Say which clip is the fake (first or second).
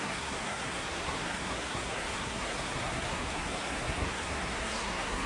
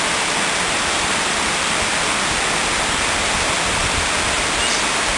first